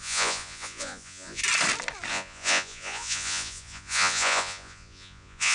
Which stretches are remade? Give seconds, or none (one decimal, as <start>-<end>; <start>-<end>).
0.0-1.4; 2.1-5.5